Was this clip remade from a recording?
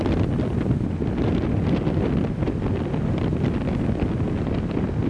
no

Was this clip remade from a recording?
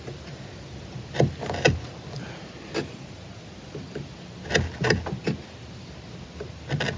no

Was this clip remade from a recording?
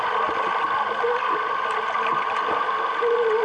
no